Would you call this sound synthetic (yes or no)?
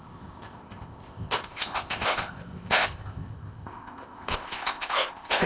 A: yes